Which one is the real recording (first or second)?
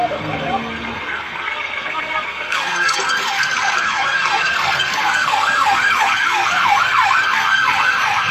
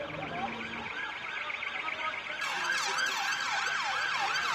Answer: second